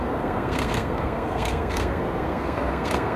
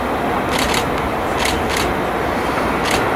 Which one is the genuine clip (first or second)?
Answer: second